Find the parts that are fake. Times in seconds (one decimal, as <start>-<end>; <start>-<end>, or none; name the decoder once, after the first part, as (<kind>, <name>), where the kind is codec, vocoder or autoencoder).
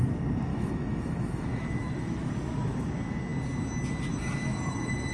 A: 0.5-2.3 (autoencoder, DAC-VAE)